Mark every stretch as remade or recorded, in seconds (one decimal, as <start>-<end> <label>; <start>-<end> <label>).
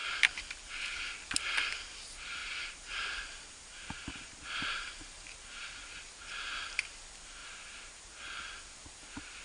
0.0-2.4 recorded; 2.4-5.5 remade; 5.5-7.4 recorded; 7.4-8.2 remade; 8.2-9.4 recorded